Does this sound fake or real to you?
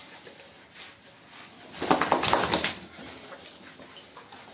real